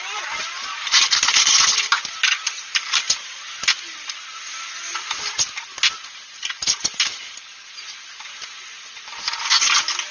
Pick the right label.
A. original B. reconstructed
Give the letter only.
A